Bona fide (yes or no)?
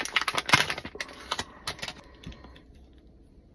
yes